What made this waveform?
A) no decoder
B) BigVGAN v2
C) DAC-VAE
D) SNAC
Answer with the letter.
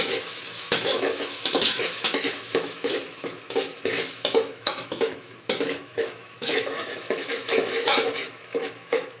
C